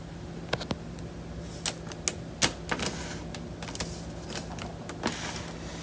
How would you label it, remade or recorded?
recorded